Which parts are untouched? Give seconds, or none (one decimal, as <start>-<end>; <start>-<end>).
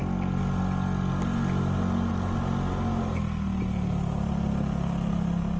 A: 0.0-5.6